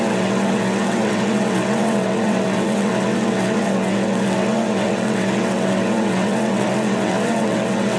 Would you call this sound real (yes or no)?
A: no